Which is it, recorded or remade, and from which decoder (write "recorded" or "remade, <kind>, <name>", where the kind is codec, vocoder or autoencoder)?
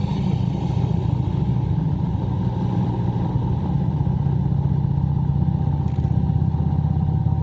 recorded